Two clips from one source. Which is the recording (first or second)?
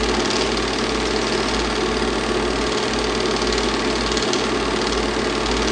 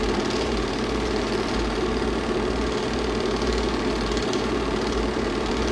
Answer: first